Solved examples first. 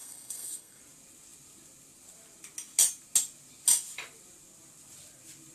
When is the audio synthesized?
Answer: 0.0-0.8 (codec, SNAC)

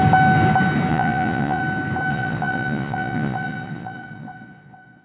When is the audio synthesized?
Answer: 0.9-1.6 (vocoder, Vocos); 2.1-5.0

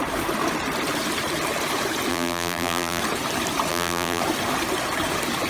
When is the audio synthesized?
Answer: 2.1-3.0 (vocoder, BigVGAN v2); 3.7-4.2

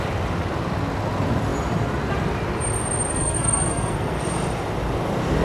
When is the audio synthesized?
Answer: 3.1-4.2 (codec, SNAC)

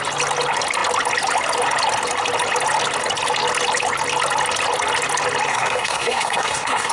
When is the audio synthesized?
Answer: 5.5-6.9 (codec, SNAC)

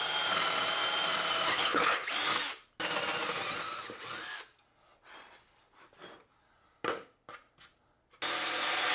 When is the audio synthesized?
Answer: 1.5-2.1 (codec, HILCodec)